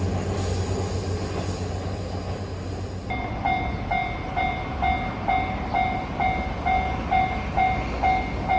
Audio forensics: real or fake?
real